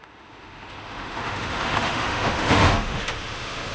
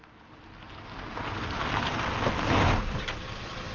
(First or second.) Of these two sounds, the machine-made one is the first